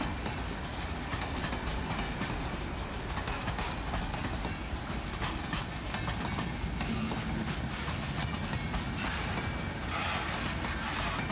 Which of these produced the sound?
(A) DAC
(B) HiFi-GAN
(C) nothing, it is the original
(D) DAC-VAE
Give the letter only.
C